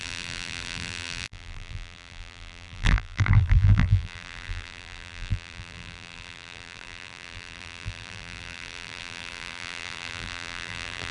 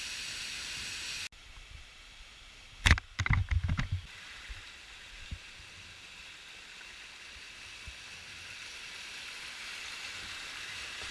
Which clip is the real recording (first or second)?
second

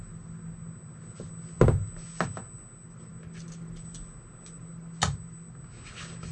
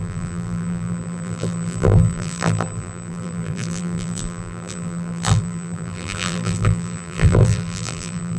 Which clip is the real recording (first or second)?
first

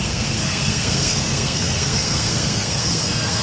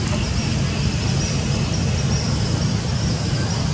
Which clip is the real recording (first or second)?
second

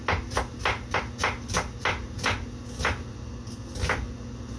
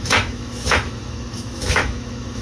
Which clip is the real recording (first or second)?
first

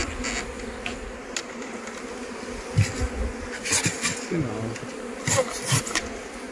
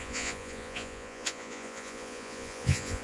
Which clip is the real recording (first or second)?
first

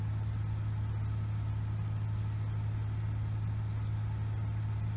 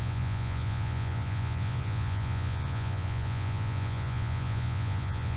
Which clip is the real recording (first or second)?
first